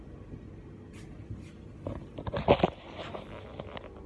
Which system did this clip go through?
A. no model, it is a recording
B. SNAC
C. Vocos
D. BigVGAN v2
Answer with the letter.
A